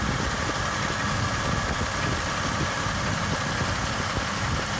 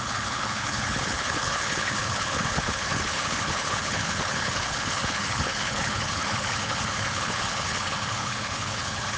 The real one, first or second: first